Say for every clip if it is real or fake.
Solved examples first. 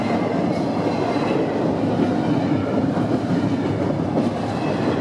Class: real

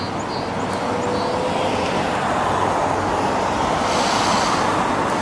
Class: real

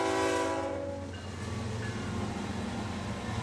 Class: real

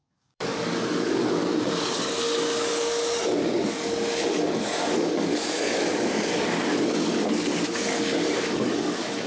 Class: fake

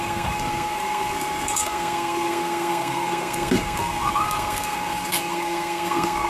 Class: fake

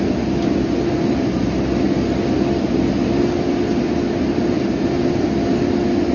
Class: real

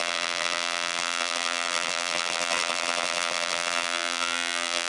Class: fake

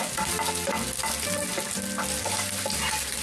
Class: real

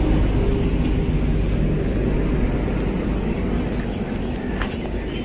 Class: real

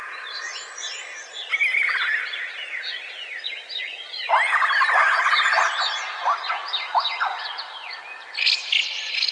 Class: real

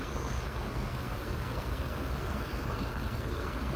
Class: fake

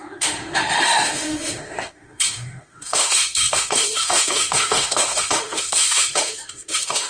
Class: fake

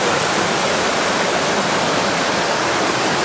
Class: real